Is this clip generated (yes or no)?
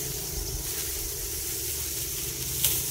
no